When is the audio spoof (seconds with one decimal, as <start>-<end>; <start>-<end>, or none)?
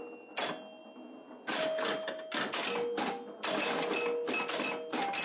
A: none